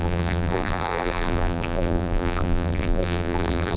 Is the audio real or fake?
fake